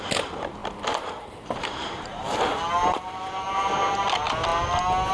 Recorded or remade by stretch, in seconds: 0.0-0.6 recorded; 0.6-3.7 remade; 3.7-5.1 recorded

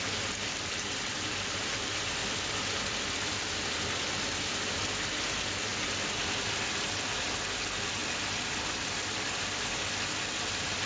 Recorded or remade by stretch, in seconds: 0.0-2.2 recorded; 2.2-3.0 remade; 3.0-10.9 recorded

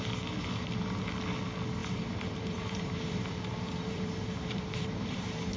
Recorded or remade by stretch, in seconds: 0.0-1.8 recorded; 1.8-5.6 remade

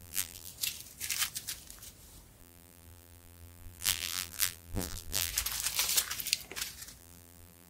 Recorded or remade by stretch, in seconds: 0.0-0.5 remade; 0.5-2.4 recorded; 2.4-5.3 remade; 5.3-7.0 recorded; 7.0-7.7 remade

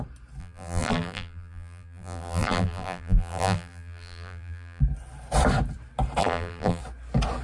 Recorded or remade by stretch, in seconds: 0.0-0.4 recorded; 0.4-4.8 remade; 4.8-6.2 recorded; 6.2-6.8 remade; 6.8-7.4 recorded

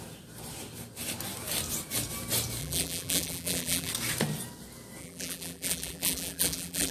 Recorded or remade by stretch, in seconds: 0.0-2.6 recorded; 2.6-3.9 remade; 3.9-5.0 recorded; 5.0-6.9 remade

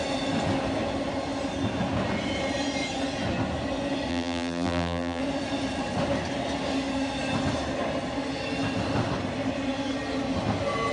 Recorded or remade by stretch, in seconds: 0.0-4.1 recorded; 4.1-5.2 remade; 5.2-10.9 recorded